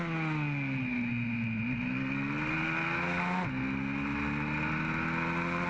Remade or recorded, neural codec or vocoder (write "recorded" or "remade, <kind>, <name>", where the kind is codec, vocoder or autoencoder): recorded